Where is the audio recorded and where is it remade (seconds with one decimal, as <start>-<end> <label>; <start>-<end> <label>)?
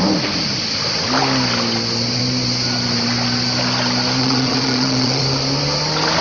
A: 0.0-4.2 recorded; 4.2-5.2 remade; 5.2-6.2 recorded